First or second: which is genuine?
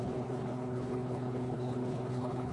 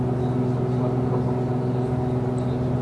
second